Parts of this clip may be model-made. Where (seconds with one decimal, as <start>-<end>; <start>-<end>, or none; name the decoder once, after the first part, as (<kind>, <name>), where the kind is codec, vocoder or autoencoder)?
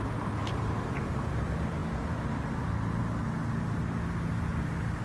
none